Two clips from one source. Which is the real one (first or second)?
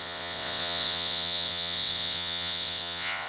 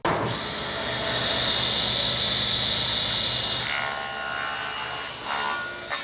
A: second